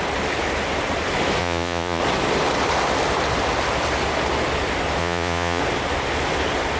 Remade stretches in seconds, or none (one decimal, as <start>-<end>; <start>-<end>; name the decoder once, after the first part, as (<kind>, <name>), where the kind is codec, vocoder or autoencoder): 1.4-2.0 (vocoder, Vocos); 5.0-5.6